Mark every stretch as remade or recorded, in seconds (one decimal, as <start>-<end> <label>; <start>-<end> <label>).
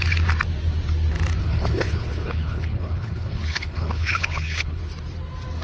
0.0-1.4 recorded; 1.4-4.8 remade; 4.8-5.6 recorded